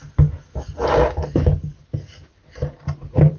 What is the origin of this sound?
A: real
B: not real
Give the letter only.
A